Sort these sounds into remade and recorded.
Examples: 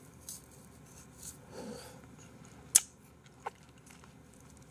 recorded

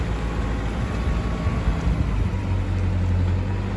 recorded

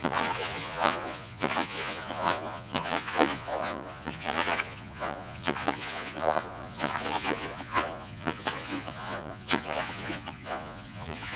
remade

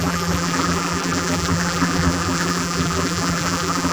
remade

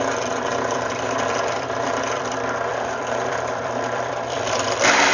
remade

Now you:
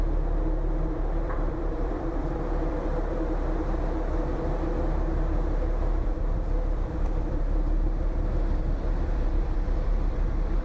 remade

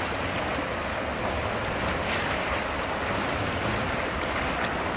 recorded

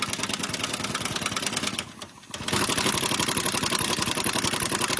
recorded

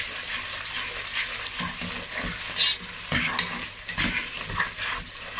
recorded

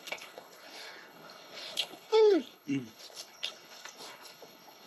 remade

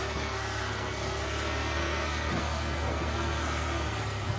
remade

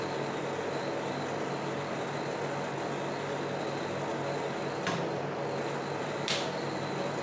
recorded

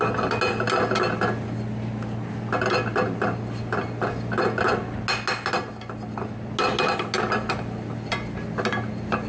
recorded